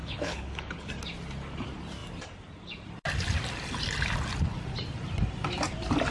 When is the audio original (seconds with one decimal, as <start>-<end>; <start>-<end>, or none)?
0.9-6.1